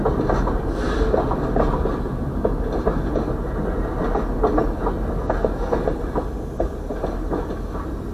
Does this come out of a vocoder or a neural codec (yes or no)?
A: no